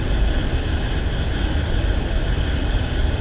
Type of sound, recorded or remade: recorded